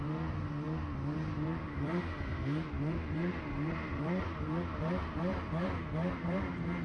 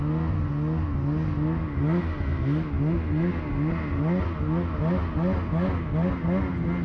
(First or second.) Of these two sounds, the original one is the second